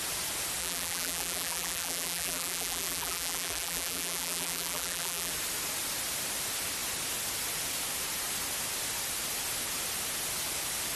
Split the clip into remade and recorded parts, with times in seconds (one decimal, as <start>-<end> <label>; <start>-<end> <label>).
0.0-0.6 recorded; 0.6-5.3 remade; 5.3-11.0 recorded